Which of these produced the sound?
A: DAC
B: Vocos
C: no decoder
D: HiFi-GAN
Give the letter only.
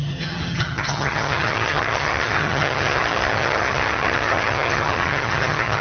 D